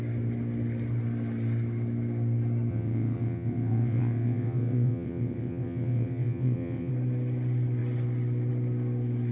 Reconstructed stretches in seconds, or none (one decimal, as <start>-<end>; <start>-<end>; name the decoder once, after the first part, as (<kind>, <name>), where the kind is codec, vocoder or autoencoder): 2.7-6.9 (vocoder, WaveNeXt)